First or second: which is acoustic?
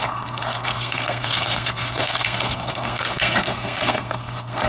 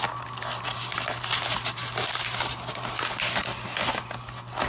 second